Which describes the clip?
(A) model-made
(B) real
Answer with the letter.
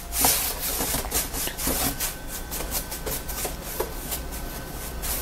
B